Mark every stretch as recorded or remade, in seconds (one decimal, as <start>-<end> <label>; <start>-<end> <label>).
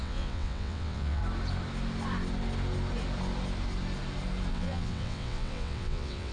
0.0-1.2 remade; 1.2-4.5 recorded; 4.5-6.3 remade